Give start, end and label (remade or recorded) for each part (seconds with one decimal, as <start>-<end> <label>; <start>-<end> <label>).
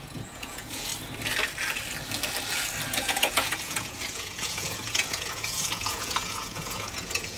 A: 0.0-0.9 remade; 0.9-2.9 recorded; 2.9-7.4 remade